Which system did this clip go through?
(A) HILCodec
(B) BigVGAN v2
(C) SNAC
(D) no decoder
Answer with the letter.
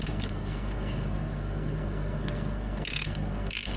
C